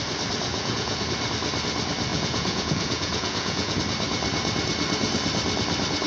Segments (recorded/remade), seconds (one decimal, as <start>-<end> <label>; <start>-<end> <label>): 0.0-0.5 recorded; 0.5-1.0 remade; 1.0-2.1 recorded; 2.1-3.8 remade; 3.8-6.1 recorded